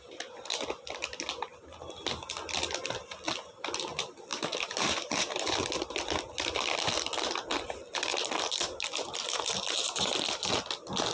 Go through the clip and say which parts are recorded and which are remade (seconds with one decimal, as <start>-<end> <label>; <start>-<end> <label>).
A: 0.0-4.3 recorded; 4.3-5.7 remade; 5.7-11.1 recorded